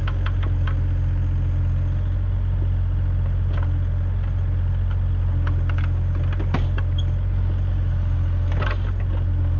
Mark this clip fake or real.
real